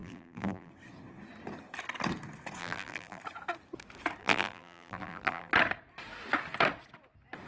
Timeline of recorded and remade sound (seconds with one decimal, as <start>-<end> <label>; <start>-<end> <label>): 0.0-0.7 remade; 0.7-2.6 recorded; 2.6-3.2 remade; 3.2-4.2 recorded; 4.2-5.5 remade; 5.5-7.5 recorded